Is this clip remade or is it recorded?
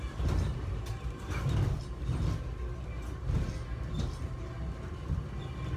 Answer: recorded